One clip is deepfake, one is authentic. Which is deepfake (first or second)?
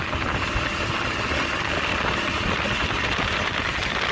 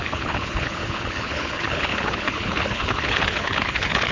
second